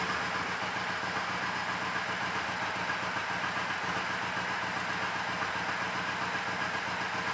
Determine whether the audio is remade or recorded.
recorded